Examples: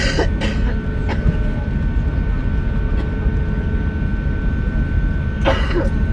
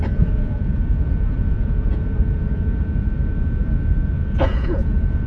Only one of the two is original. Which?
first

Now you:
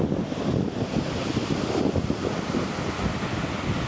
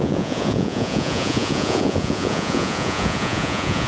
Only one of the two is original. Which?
first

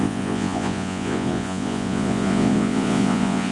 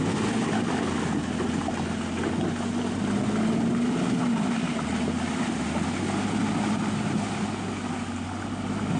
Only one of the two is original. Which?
second